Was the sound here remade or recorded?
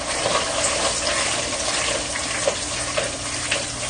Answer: recorded